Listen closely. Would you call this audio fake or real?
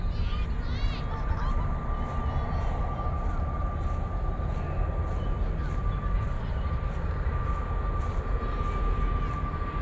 real